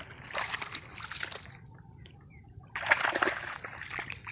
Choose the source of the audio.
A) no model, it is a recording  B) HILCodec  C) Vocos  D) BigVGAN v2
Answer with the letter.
A